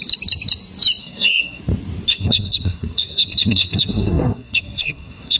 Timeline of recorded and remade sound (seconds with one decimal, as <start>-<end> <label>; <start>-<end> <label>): 0.0-1.0 recorded; 1.0-1.6 remade; 1.6-2.1 recorded; 2.1-5.4 remade